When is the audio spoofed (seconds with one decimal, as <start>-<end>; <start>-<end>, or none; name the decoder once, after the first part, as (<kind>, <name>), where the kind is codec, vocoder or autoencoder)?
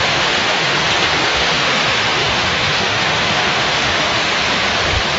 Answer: 0.0-0.7 (autoencoder, DAC-VAE); 1.2-4.3